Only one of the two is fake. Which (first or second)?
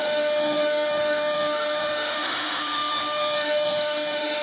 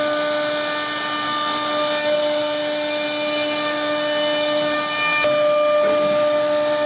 first